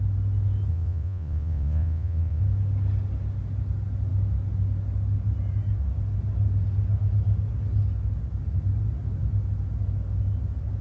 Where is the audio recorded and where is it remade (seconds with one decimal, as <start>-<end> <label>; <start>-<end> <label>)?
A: 0.0-0.7 recorded; 0.7-2.4 remade; 2.4-10.8 recorded